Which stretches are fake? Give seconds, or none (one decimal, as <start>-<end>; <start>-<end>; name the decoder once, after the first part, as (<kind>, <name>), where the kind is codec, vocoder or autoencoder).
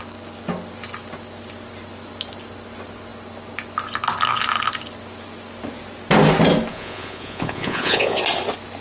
6.7-8.2 (vocoder, Vocos)